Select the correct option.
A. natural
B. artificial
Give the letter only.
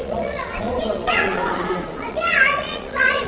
B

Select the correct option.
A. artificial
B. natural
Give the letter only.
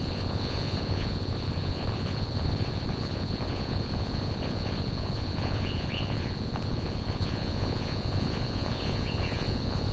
A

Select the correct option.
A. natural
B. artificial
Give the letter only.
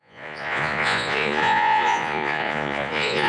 B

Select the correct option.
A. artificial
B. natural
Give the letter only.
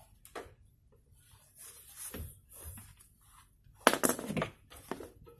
B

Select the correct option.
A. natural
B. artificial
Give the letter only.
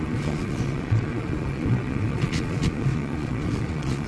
B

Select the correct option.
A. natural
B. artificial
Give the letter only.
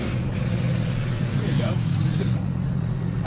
B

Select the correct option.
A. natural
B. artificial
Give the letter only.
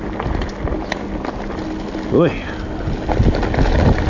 A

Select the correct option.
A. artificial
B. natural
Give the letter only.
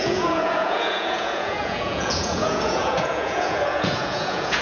A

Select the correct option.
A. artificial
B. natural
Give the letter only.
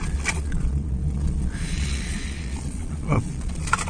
A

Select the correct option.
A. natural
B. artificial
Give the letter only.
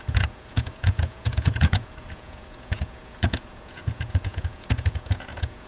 B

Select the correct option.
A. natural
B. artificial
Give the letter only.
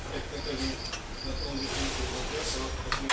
A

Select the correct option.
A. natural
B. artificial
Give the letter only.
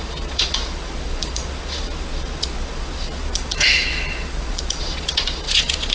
B